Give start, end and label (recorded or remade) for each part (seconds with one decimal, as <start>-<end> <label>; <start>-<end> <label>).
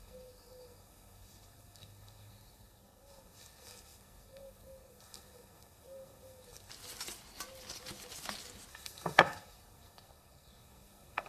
0.0-6.7 remade; 6.7-8.7 recorded; 8.7-11.3 remade